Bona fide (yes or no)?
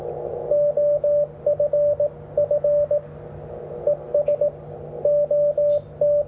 yes